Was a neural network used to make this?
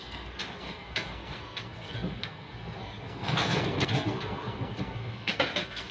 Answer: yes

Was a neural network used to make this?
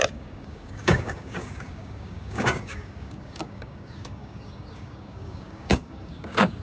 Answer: yes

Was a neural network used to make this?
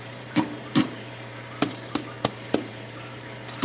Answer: yes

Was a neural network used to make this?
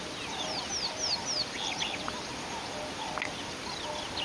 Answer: no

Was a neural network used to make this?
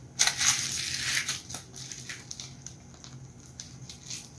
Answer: no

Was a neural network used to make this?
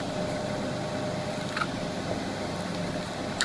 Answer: no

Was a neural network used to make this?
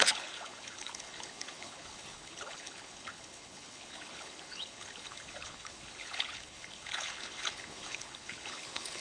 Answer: yes